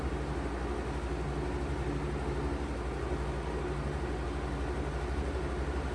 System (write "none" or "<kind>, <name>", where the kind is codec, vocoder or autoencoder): none